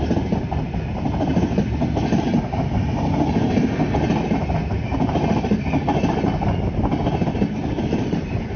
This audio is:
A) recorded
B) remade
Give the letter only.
A